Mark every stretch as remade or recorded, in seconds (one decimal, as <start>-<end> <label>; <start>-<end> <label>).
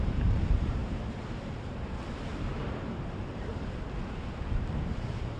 0.0-3.5 remade; 3.5-4.3 recorded; 4.3-5.4 remade